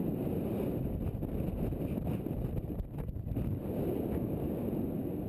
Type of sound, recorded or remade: recorded